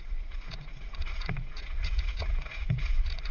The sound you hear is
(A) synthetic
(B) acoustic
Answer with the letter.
A